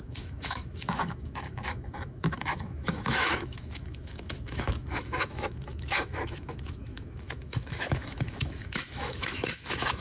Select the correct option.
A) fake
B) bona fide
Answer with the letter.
A